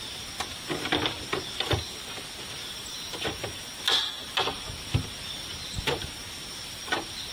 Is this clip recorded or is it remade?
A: recorded